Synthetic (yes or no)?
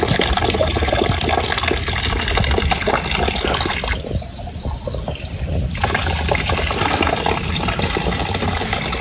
no